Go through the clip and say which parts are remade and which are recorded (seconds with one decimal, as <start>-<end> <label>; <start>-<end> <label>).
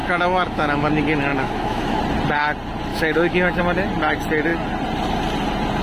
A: 0.0-0.9 remade; 0.9-1.3 recorded; 1.3-2.0 remade; 2.0-2.9 recorded; 2.9-3.6 remade; 3.6-5.8 recorded